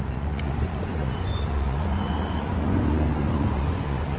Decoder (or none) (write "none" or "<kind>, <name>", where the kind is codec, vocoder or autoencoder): vocoder, Vocos